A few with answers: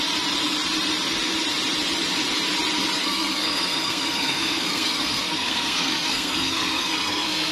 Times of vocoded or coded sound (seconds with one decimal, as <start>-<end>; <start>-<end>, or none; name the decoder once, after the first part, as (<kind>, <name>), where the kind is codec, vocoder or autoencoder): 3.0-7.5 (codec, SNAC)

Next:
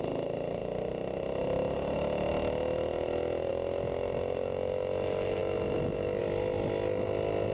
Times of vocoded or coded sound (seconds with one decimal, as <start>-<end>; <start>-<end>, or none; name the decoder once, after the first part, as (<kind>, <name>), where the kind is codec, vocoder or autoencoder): none

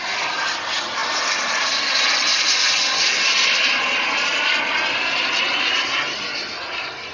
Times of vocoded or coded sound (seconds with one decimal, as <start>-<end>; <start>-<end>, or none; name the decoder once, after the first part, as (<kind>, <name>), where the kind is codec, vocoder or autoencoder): none

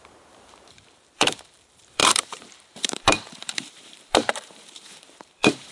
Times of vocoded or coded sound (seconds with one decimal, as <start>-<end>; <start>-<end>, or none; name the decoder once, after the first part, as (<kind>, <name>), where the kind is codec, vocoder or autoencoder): 0.0-5.7 (vocoder, BigVGAN v2)

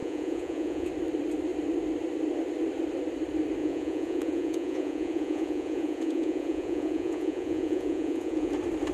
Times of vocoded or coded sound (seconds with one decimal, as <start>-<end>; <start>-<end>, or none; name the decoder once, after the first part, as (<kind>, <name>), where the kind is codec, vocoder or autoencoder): 0.0-0.9 (vocoder, Vocos); 3.6-8.5

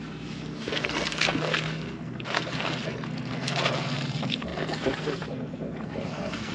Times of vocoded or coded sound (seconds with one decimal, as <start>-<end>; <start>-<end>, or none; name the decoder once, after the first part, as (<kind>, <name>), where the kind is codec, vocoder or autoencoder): 0.0-6.5 (codec, SNAC)

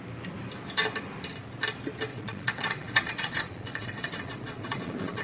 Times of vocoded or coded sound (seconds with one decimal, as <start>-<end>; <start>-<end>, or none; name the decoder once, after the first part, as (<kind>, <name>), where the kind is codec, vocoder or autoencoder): 2.1-5.2 (vocoder, Vocos)

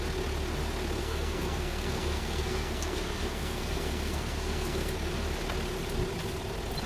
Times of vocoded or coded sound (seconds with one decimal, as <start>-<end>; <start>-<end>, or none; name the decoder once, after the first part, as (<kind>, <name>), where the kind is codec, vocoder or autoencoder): 1.0-5.1 (codec, SNAC)